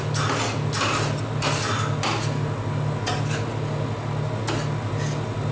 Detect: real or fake real